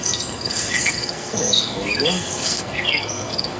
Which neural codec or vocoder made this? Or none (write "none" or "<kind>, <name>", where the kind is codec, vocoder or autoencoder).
codec, SNAC